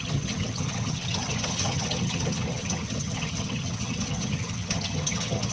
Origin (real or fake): fake